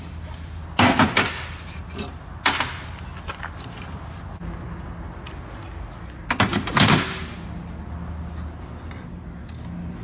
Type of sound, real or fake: real